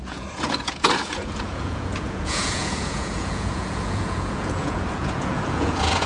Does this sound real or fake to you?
fake